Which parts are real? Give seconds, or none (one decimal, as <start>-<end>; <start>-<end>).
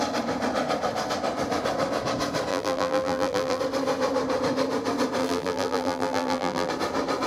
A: 0.0-2.5; 3.6-5.2; 6.7-7.3